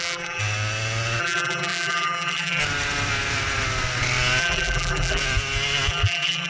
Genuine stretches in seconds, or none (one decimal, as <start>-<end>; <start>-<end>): 0.4-1.2; 2.6-4.4; 5.2-5.9